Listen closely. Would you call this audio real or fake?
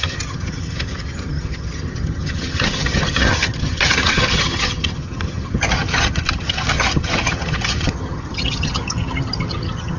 fake